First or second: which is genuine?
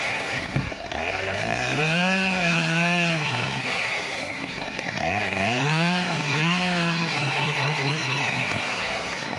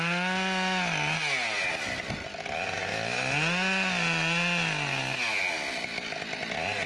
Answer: second